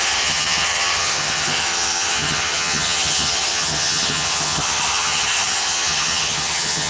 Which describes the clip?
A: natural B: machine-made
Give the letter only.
B